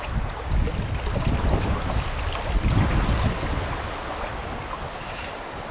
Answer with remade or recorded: recorded